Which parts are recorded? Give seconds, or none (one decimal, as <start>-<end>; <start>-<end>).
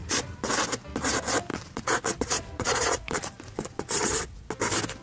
0.5-1.5; 4.5-5.0